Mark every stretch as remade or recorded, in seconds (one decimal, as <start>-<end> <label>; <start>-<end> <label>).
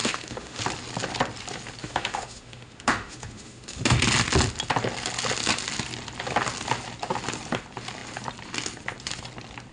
0.0-0.6 remade; 0.6-1.8 recorded; 1.8-4.0 remade; 4.0-9.7 recorded